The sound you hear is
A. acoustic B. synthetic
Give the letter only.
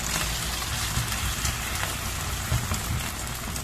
A